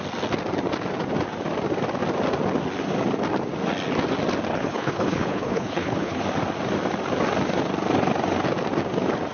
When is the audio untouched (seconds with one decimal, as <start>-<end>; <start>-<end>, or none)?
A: 0.0-4.5; 6.2-9.3